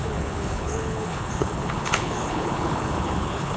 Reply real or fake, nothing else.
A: fake